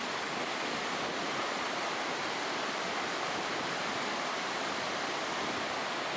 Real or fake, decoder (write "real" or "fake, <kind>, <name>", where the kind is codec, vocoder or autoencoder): fake, vocoder, BigVGAN v2